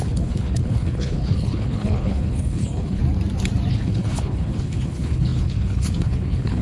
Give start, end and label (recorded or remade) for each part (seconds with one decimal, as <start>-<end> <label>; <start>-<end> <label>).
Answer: 0.0-3.0 remade; 3.0-3.7 recorded; 3.7-6.6 remade